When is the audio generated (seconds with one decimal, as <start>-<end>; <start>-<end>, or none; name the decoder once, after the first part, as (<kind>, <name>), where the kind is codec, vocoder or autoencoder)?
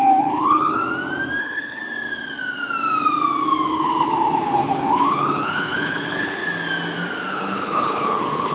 0.0-0.8 (codec, HILCodec); 1.4-1.8; 3.7-6.4; 7.3-8.5